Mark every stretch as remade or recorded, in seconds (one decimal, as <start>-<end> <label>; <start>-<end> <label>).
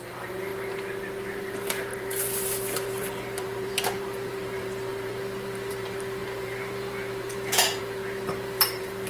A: 0.0-0.5 remade; 0.5-1.3 recorded; 1.3-9.1 remade